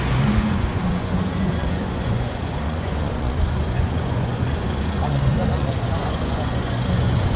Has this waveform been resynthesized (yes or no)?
yes